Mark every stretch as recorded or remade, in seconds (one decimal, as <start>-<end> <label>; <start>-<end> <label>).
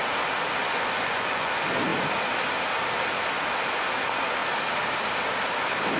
0.0-0.6 recorded; 0.6-1.5 remade; 1.5-6.0 recorded